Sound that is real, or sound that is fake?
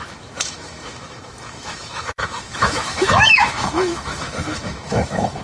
fake